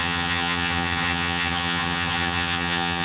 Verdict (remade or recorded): remade